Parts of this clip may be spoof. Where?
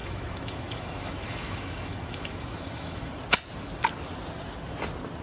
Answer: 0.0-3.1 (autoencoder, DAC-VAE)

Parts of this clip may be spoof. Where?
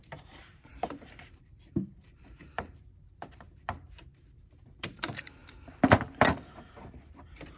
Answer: 0.0-5.4 (vocoder, BigVGAN v2); 6.6-7.6